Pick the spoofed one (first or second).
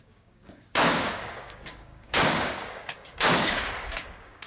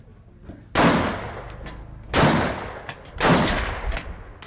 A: first